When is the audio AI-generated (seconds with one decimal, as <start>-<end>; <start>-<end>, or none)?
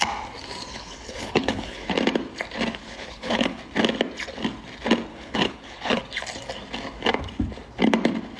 0.7-1.9; 2.8-3.6; 5.1-6.0